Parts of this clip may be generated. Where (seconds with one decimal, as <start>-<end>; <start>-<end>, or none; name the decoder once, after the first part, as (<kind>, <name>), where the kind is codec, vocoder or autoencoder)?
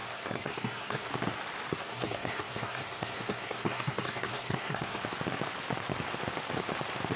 0.0-1.1 (codec, SNAC); 1.8-5.0